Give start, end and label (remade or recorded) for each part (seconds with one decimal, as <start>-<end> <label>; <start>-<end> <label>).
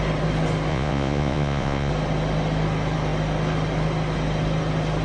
0.0-0.7 recorded; 0.7-1.9 remade; 1.9-5.0 recorded